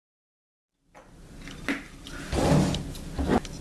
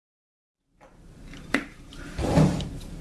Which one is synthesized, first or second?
second